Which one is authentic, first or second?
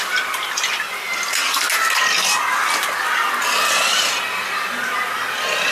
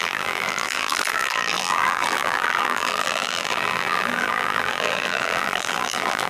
first